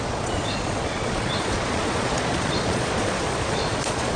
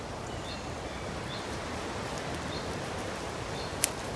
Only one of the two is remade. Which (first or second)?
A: first